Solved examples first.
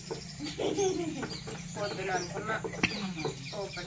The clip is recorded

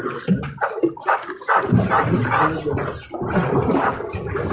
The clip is recorded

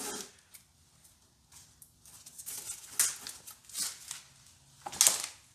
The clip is recorded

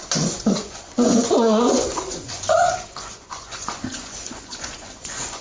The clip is remade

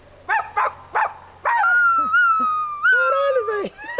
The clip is recorded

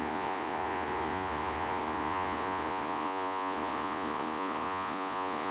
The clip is remade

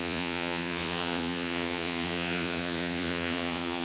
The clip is remade